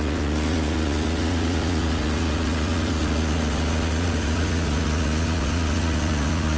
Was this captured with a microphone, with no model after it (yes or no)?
no